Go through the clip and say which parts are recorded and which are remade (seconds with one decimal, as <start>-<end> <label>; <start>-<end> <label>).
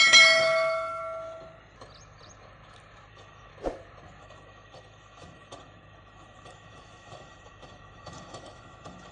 0.0-1.0 remade; 1.0-3.1 recorded; 3.1-3.5 remade; 3.5-4.2 recorded; 4.2-9.1 remade